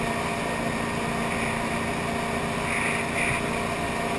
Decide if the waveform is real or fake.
real